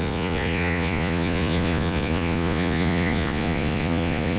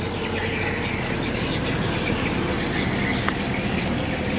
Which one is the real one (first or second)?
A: second